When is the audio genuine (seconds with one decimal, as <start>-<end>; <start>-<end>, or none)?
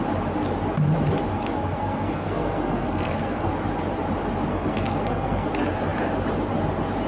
0.0-1.3; 3.5-4.5; 5.5-7.1